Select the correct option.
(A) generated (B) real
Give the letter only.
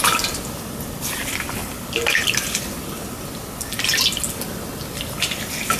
B